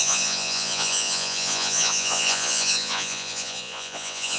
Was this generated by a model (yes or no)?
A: yes